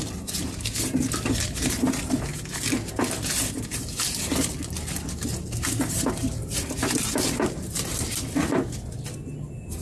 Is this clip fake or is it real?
real